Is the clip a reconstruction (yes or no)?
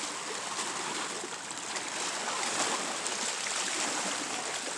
no